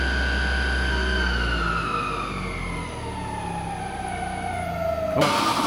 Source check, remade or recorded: recorded